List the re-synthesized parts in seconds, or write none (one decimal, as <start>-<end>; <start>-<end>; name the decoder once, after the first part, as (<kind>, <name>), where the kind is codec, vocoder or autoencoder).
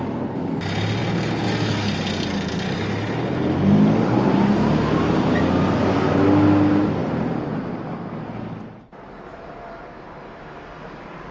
none